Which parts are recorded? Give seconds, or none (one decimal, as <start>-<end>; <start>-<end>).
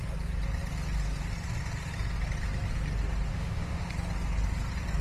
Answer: 0.0-3.3; 3.9-5.0